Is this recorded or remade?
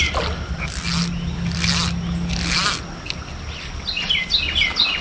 recorded